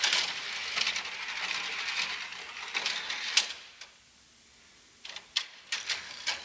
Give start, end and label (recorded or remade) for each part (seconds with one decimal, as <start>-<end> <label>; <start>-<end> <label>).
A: 0.0-6.4 recorded